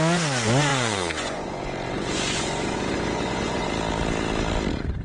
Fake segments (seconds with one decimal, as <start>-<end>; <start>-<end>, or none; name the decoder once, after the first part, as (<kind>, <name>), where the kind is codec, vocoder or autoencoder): 0.7-3.7 (vocoder, Vocos)